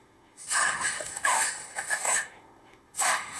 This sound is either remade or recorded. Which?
remade